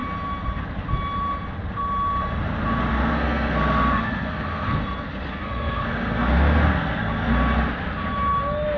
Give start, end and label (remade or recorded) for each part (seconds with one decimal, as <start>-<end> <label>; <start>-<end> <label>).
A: 0.0-2.9 recorded; 2.9-4.8 remade; 4.8-5.3 recorded; 5.3-7.3 remade; 7.3-8.8 recorded